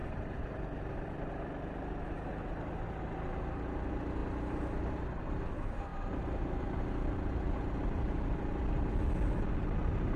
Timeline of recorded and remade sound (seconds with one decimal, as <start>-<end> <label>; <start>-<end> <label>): 0.0-0.8 remade; 0.8-10.2 recorded